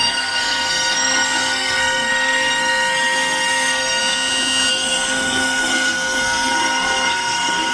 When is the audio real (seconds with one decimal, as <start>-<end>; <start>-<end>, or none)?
4.0-4.7